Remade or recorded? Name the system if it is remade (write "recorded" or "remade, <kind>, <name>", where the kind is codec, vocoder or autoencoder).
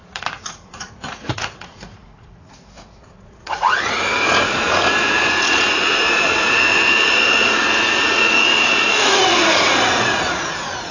remade, vocoder, Vocos